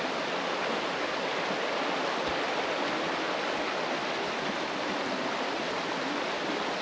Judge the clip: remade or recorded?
recorded